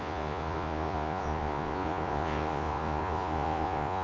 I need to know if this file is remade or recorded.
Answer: remade